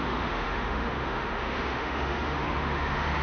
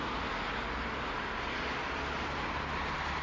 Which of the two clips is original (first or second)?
second